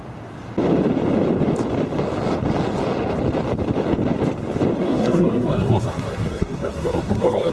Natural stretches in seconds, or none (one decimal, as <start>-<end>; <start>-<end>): 0.0-4.8